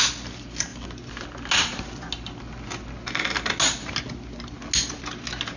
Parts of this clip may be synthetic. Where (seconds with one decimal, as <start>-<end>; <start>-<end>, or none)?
none